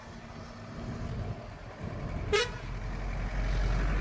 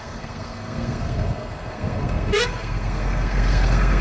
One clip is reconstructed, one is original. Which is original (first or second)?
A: first